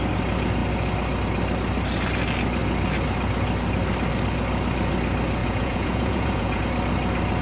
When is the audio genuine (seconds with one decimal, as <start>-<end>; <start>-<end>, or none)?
0.0-5.4; 6.6-7.4